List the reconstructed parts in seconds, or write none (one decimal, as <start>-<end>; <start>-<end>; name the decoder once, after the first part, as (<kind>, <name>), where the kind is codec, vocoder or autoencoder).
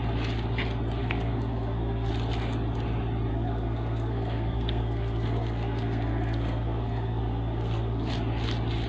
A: 1.0-2.1 (codec, SNAC); 3.3-8.1